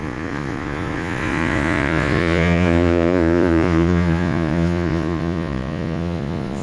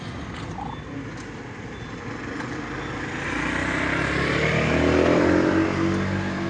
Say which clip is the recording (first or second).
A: second